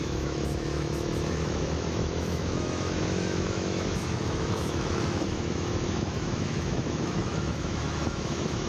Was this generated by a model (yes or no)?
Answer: yes